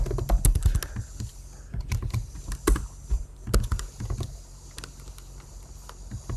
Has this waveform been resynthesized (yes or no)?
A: no